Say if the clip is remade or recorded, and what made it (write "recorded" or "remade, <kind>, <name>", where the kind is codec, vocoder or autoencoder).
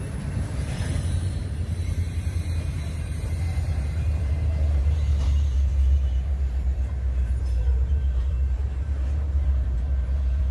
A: remade, vocoder, BigVGAN v2